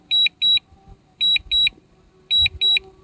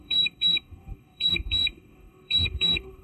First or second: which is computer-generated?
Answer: second